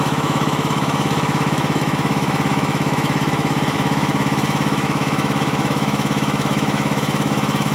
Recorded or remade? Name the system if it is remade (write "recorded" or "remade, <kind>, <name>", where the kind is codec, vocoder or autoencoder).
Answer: remade, autoencoder, DAC-VAE